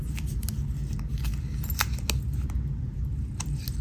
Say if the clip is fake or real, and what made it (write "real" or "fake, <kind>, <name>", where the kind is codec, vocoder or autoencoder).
real